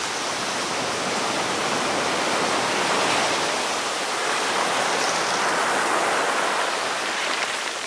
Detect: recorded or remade recorded